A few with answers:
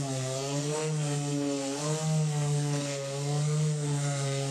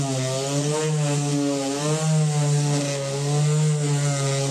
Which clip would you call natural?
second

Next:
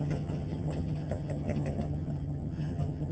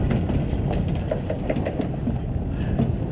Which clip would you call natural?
second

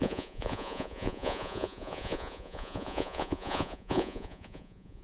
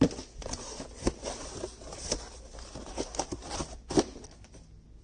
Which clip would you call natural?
second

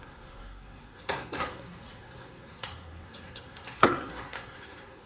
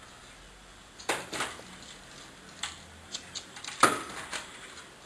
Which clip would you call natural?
second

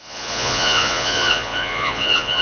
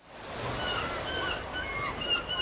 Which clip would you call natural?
second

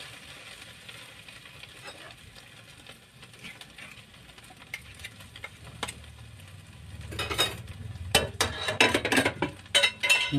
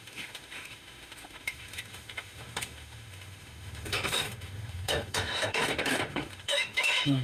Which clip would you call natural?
first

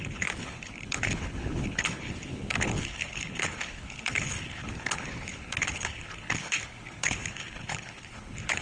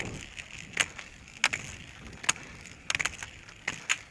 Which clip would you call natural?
second